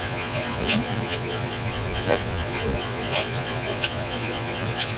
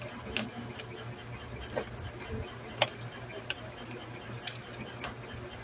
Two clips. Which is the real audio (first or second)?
second